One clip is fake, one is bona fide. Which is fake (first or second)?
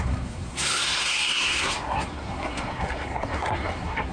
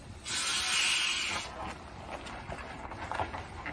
first